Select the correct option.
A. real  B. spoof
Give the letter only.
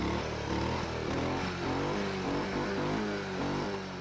A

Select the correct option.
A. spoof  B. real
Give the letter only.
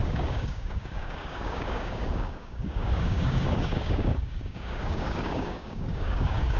A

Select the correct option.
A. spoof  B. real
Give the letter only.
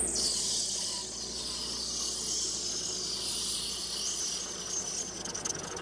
B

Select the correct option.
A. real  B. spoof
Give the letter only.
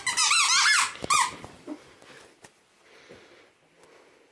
A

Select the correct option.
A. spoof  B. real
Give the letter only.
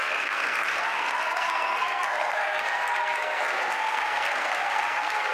A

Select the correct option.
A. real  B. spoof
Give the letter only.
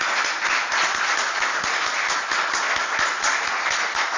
A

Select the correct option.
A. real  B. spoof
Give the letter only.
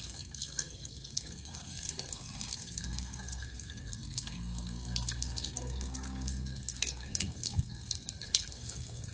B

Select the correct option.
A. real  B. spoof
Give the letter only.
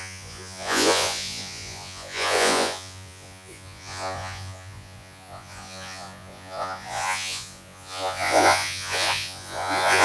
B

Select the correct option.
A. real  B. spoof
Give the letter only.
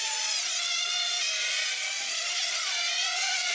B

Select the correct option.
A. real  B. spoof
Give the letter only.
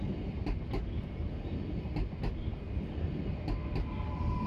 A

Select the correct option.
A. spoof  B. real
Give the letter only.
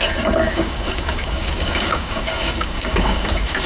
A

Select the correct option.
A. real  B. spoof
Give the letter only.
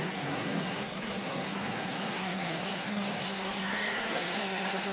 B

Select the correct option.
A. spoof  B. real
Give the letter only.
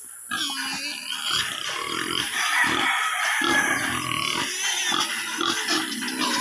B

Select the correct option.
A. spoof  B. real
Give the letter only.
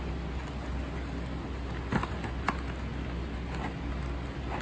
B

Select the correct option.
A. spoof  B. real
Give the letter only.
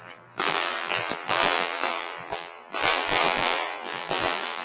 A